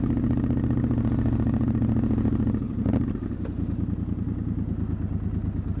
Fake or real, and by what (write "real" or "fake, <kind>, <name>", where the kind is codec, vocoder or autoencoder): real